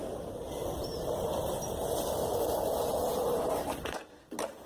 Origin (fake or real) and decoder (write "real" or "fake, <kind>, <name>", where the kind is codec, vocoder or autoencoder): fake, vocoder, BigVGAN v2